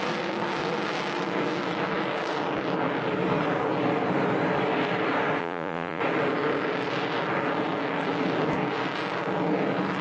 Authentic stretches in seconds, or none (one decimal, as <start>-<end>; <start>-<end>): 0.0-5.4; 6.0-10.0